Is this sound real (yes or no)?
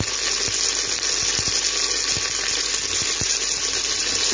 yes